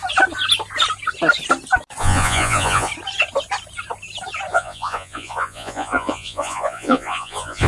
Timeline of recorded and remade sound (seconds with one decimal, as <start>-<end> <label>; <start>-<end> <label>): 0.0-2.0 recorded; 2.0-2.9 remade; 2.9-4.5 recorded; 4.5-7.7 remade